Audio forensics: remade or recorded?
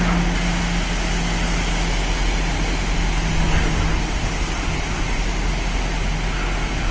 recorded